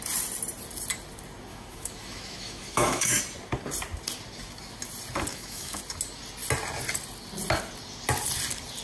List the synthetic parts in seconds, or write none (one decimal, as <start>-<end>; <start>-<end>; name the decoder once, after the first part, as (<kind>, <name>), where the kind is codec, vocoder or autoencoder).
1.5-3.2 (autoencoder, DAC-VAE); 5.3-5.8